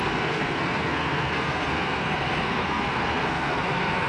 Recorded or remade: remade